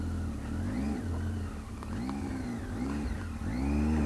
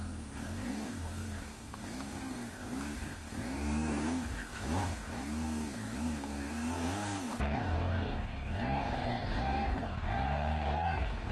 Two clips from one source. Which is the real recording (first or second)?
first